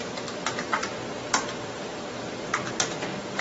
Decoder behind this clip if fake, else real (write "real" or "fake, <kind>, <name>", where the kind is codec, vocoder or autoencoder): fake, vocoder, BigVGAN v2